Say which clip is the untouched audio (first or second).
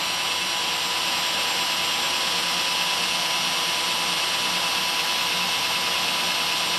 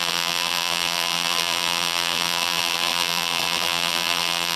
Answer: first